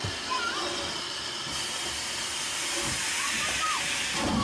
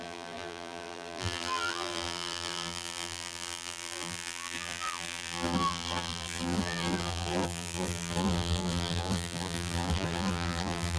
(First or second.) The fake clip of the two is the second